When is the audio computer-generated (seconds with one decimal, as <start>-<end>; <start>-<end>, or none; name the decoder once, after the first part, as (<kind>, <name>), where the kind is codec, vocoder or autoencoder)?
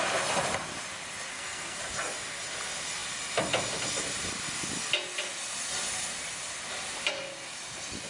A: 1.3-1.8 (codec, SNAC)